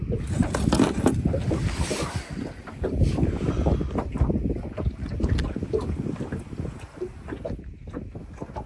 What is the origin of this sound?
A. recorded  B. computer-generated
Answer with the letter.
A